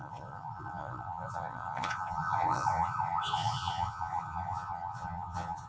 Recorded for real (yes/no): no